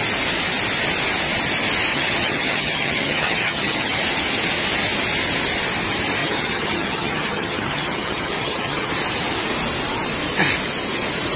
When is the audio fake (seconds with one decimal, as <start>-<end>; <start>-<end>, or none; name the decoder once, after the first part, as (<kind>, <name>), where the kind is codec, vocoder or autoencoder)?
1.9-4.0 (vocoder, HiFi-GAN); 6.2-8.9